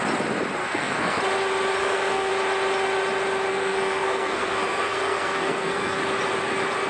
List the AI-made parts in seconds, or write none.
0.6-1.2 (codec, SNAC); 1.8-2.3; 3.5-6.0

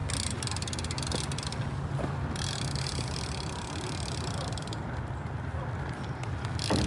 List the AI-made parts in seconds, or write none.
none

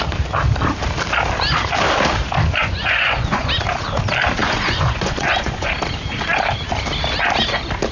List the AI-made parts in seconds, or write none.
2.6-3.5 (vocoder, Vocos); 4.4-5.7